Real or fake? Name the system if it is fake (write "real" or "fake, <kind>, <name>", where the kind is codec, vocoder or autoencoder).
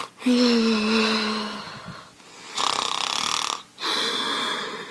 real